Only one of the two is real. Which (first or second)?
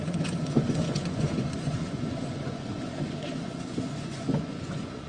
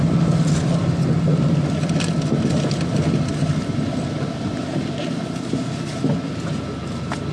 second